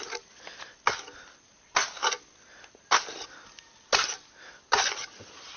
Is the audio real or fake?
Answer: real